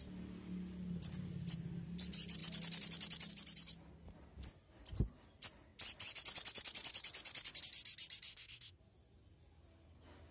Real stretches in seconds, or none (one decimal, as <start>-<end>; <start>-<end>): 0.0-8.3; 8.8-10.3